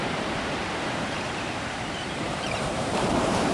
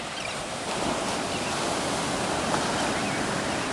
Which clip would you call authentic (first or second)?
second